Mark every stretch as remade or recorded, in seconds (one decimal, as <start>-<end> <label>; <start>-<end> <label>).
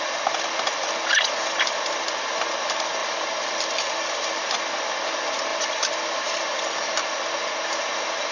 0.0-3.0 recorded; 3.0-4.3 remade; 4.3-5.5 recorded; 5.5-7.0 remade; 7.0-8.3 recorded